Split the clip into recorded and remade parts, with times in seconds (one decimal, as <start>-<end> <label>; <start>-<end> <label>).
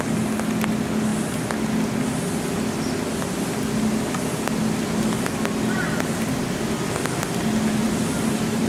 0.0-7.8 recorded; 7.8-8.7 remade